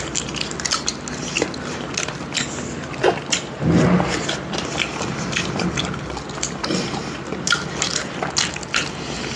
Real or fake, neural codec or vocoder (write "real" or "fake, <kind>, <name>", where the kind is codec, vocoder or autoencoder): real